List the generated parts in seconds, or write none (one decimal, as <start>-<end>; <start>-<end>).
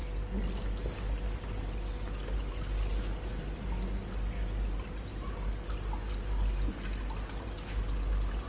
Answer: none